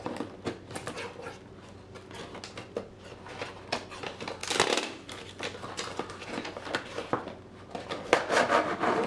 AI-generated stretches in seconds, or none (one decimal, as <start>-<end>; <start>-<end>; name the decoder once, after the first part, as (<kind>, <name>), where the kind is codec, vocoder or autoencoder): none